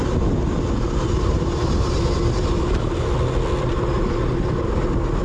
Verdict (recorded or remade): recorded